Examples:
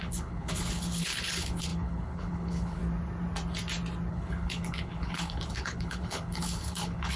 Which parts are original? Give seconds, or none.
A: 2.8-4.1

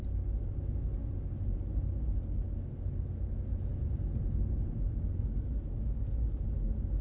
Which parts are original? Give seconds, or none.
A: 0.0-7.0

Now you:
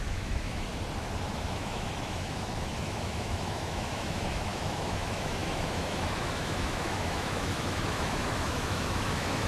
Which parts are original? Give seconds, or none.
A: 0.7-1.3